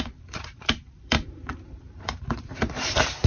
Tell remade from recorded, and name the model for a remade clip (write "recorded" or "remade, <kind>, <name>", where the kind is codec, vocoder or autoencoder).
remade, vocoder, BigVGAN v2